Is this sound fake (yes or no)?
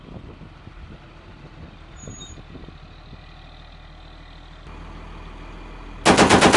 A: no